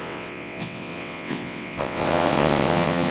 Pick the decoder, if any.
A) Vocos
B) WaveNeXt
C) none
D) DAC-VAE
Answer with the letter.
B